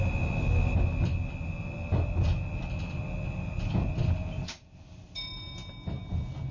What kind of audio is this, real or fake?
real